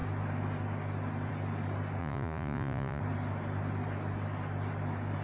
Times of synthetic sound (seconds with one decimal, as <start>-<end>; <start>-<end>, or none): 2.0-3.0